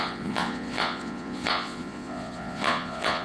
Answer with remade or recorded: remade